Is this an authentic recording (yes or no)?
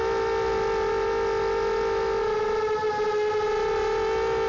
yes